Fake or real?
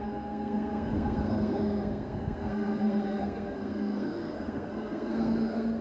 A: fake